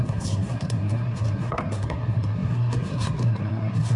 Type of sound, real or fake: fake